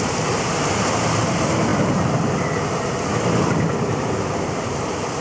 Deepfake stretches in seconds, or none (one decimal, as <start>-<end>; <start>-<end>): none